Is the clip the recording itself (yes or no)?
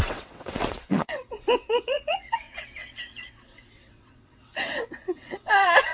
no